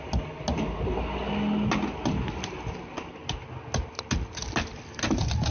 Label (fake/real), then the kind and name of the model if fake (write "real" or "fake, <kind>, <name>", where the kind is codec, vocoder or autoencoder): real